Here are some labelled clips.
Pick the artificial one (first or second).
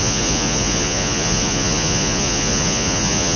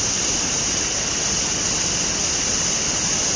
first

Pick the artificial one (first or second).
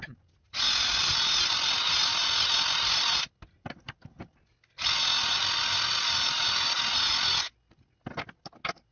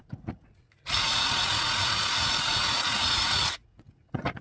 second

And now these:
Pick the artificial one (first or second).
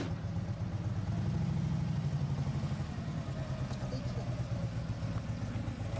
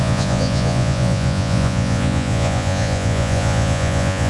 second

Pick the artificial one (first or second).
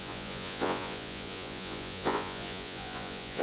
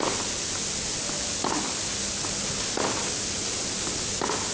first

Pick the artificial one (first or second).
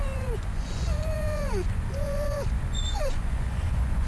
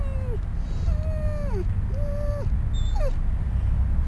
first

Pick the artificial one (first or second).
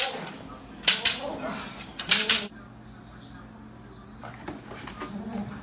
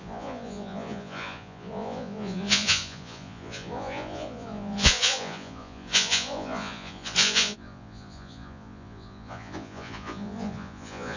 second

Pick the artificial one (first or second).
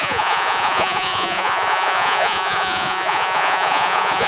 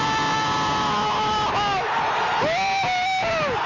first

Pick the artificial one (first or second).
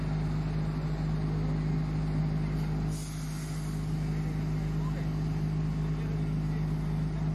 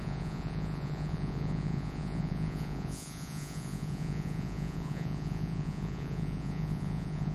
second